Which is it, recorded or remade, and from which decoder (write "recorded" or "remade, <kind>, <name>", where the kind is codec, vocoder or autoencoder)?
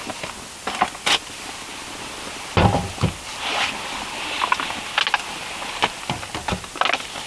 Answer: recorded